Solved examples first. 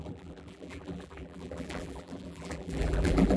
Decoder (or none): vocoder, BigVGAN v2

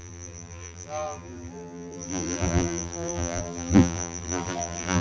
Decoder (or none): vocoder, BigVGAN v2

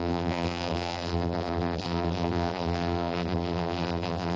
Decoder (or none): vocoder, BigVGAN v2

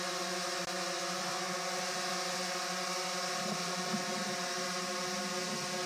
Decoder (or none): none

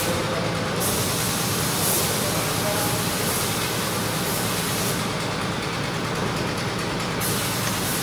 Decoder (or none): none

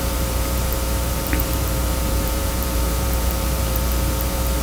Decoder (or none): vocoder, BigVGAN v2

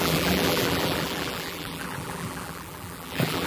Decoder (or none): vocoder, BigVGAN v2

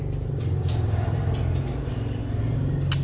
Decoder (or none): none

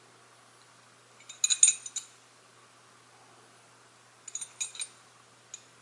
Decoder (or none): none